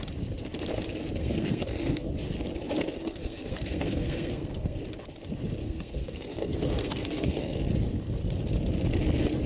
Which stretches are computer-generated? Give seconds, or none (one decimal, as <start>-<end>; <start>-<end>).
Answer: 1.2-2.1; 3.0-4.8; 5.6-7.6